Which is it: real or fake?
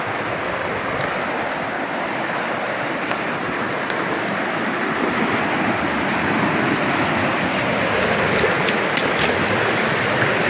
real